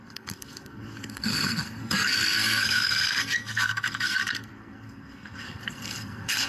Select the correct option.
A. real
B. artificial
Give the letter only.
B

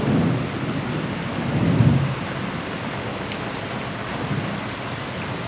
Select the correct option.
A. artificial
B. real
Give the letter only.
B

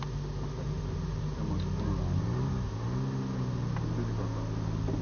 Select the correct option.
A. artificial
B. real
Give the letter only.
B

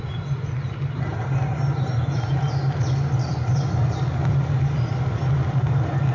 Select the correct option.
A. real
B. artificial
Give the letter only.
A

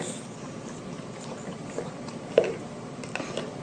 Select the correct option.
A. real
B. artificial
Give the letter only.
A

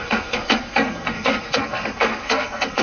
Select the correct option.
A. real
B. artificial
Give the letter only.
B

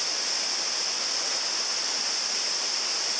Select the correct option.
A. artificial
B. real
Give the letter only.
B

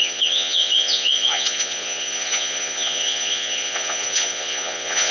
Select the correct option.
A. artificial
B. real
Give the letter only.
A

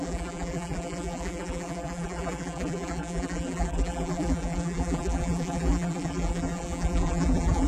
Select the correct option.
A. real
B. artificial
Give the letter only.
B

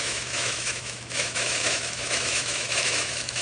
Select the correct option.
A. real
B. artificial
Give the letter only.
B